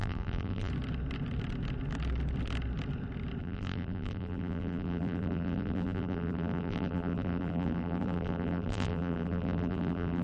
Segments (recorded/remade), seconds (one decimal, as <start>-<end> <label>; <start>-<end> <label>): 0.0-0.7 remade; 0.7-3.4 recorded; 3.4-10.2 remade